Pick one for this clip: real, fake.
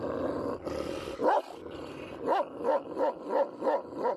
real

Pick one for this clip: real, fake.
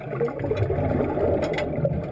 real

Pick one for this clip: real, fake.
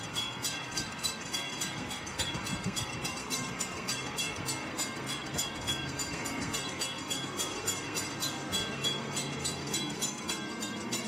fake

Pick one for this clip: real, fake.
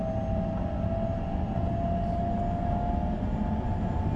real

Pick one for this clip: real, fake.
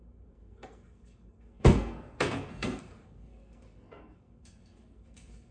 fake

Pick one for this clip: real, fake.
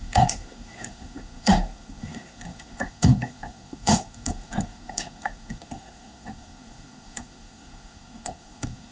fake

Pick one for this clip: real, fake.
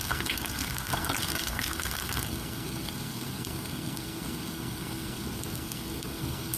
fake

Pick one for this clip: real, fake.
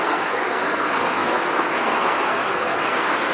fake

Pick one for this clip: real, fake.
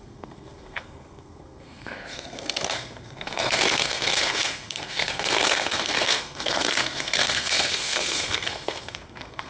fake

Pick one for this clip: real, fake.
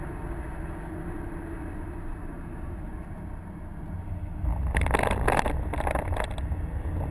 real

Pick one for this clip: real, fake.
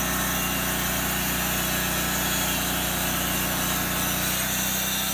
real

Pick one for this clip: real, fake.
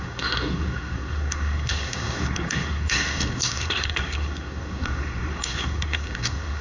fake